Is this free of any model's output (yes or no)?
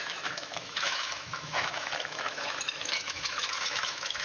no